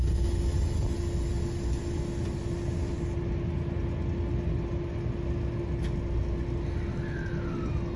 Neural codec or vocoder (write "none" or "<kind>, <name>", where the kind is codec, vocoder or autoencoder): none